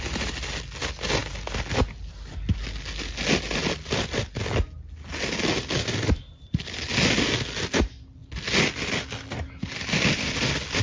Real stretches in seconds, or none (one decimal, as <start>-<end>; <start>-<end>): 0.0-10.8